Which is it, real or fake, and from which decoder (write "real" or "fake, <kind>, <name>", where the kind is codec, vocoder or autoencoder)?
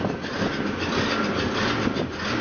real